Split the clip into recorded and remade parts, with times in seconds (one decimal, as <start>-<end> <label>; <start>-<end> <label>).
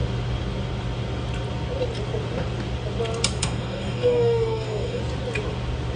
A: 0.0-3.4 recorded; 3.4-5.0 remade; 5.0-6.0 recorded